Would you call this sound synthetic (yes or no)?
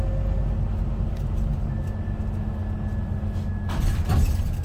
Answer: no